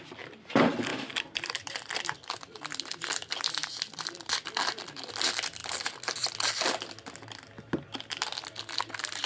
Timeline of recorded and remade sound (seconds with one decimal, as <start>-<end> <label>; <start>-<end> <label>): 0.0-0.9 recorded; 0.9-5.1 remade; 5.1-5.6 recorded; 5.6-6.3 remade; 6.3-9.3 recorded